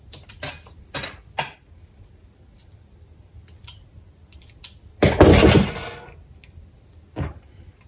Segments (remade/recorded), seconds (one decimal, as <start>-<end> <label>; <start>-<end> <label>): 0.0-7.9 recorded